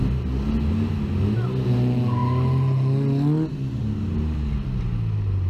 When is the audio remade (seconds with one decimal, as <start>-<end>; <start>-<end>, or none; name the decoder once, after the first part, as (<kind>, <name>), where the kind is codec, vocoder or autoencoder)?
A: none